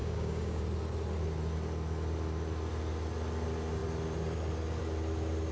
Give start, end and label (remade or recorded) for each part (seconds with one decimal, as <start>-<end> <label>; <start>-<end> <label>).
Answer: 0.0-0.6 remade; 0.6-5.5 recorded